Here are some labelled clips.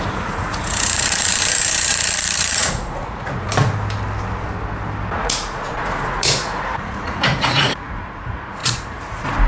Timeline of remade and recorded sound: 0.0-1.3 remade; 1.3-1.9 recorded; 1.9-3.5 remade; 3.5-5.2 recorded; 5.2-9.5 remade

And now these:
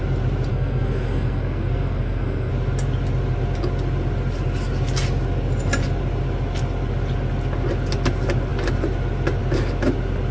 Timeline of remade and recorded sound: 0.0-0.5 recorded; 0.5-2.5 remade; 2.5-10.3 recorded